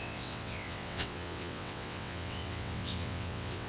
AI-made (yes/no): yes